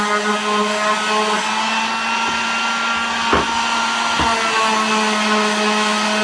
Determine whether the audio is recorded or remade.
recorded